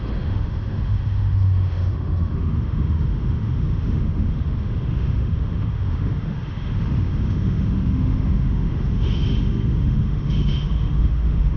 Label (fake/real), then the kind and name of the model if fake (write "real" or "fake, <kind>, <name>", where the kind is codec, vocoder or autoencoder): fake, autoencoder, DAC-VAE